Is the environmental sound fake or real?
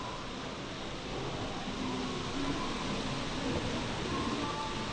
real